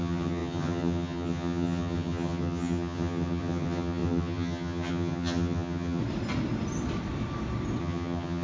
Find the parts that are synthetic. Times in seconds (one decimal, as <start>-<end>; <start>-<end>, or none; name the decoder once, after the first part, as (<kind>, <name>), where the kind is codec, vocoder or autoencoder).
0.0-6.0 (vocoder, HiFi-GAN); 7.8-8.4